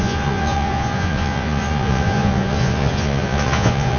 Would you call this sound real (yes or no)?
no